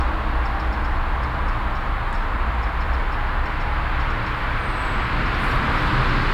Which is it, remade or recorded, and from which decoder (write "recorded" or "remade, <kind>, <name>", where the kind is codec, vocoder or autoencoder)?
recorded